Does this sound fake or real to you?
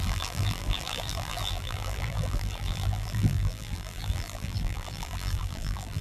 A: fake